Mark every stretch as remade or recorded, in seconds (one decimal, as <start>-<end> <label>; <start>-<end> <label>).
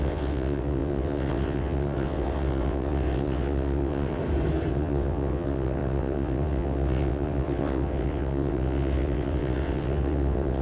0.0-4.2 remade; 4.2-4.7 recorded; 4.7-10.6 remade